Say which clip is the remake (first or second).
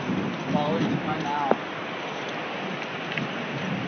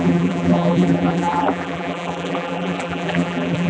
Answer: second